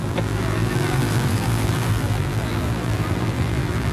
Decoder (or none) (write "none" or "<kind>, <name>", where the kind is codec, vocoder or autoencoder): vocoder, BigVGAN v2